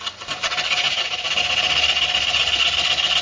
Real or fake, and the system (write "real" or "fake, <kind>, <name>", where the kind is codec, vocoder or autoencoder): real